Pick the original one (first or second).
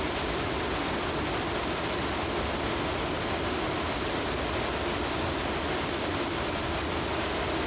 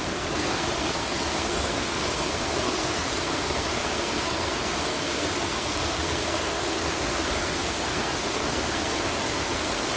first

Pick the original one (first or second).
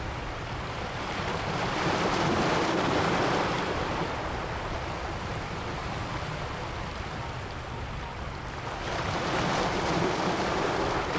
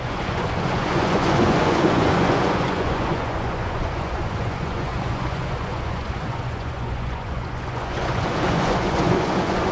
first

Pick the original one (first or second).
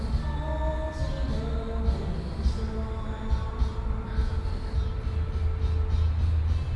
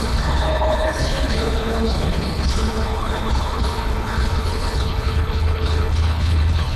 first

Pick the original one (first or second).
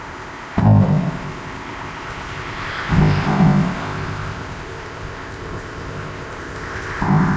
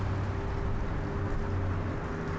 second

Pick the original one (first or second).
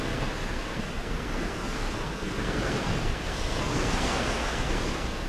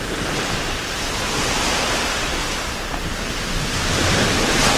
second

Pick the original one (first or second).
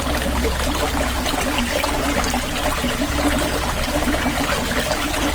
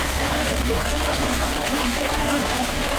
first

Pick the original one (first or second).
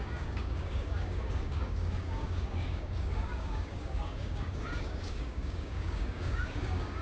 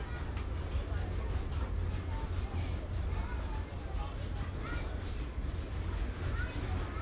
second